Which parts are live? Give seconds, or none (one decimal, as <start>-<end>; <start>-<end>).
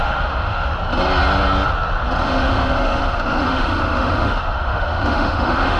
0.7-2.2